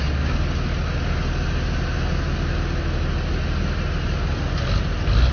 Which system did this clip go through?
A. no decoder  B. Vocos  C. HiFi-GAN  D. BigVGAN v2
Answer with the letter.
A